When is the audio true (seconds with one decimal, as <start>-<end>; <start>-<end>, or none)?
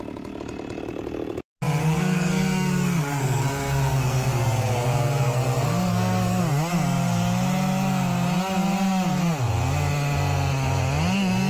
0.0-1.8; 6.4-11.5